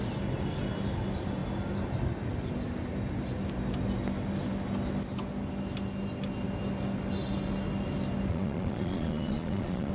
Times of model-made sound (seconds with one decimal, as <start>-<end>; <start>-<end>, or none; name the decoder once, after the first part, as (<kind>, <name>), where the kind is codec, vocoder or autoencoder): 8.3-9.9 (vocoder, Vocos)